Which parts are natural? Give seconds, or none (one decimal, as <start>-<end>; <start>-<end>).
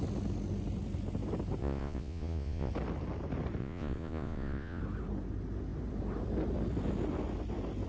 0.0-1.6; 2.7-3.6; 4.8-7.9